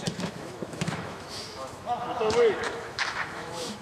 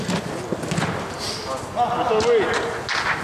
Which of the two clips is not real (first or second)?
first